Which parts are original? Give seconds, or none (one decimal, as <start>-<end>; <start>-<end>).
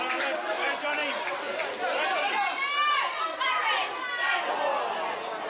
0.0-5.5